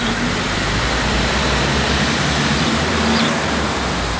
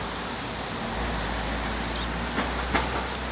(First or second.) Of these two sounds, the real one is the second